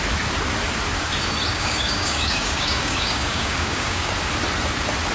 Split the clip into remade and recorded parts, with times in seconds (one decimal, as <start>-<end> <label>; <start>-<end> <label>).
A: 0.0-1.5 recorded; 1.5-4.1 remade; 4.1-5.1 recorded